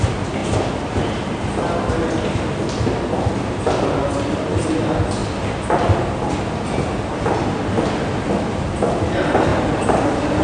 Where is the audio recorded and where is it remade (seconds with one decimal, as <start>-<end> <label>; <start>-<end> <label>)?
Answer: 0.0-10.4 recorded